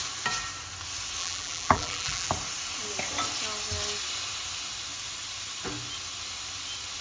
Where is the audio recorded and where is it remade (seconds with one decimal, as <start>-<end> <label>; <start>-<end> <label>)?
0.0-1.2 recorded; 1.2-2.3 remade; 2.3-7.0 recorded